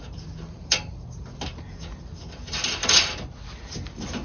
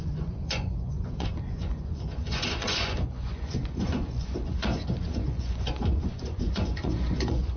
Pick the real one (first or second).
first